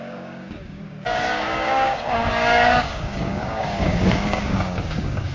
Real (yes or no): no